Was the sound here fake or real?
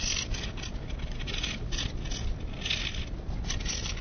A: real